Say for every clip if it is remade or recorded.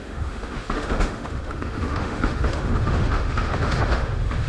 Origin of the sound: remade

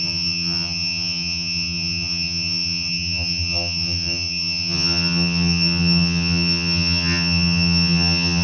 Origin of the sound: remade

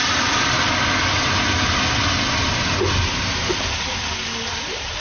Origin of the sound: recorded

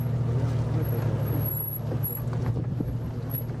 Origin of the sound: recorded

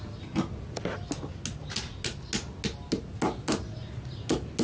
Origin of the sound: recorded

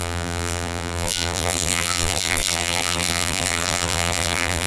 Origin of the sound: remade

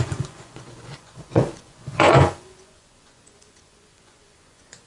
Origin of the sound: remade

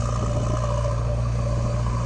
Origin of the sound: recorded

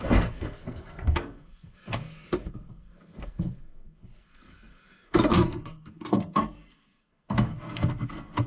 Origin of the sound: remade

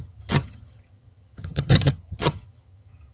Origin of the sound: remade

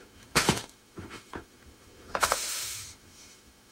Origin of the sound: remade